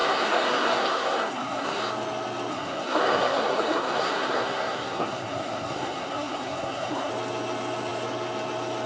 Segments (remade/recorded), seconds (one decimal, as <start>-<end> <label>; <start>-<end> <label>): 0.0-1.8 remade; 1.8-2.5 recorded; 2.5-7.1 remade; 7.1-8.9 recorded